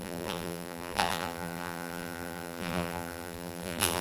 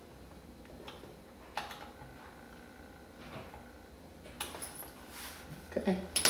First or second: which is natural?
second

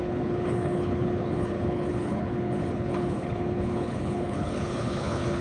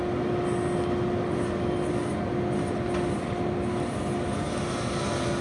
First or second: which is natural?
second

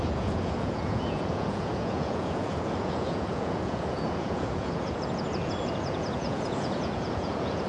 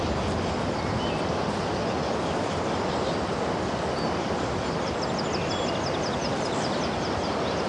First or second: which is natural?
second